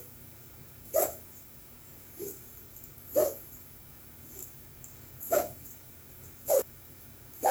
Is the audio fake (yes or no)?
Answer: yes